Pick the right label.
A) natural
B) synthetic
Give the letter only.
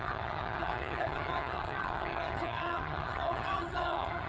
B